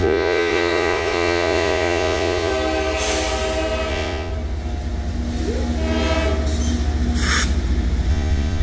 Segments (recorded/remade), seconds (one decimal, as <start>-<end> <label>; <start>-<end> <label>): 0.0-2.5 remade; 2.5-3.9 recorded; 3.9-4.3 remade; 4.3-8.1 recorded; 8.1-8.6 remade

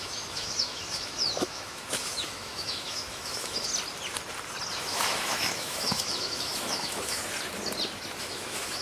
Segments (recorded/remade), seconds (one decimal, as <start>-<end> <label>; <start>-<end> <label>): 0.0-3.7 remade; 3.7-4.7 recorded; 4.7-7.2 remade; 7.2-8.2 recorded; 8.2-8.8 remade

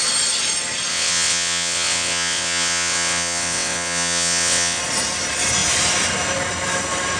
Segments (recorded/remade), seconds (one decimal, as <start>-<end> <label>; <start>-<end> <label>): 0.0-0.9 recorded; 0.9-4.8 remade; 4.8-7.2 recorded

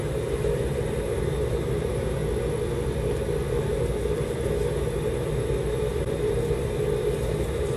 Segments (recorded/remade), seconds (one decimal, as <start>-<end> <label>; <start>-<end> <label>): 0.0-2.2 remade; 2.2-3.5 recorded; 3.5-7.8 remade